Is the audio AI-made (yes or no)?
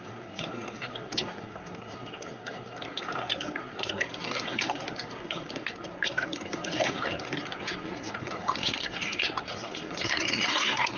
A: yes